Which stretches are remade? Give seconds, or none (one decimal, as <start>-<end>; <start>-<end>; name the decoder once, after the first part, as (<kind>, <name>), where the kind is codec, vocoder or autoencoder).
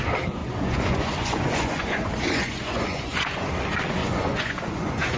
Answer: 0.4-3.5 (vocoder, Vocos); 4.0-5.2